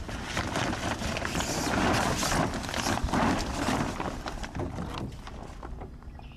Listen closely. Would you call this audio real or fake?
real